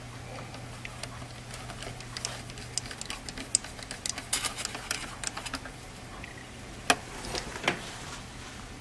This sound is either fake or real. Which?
real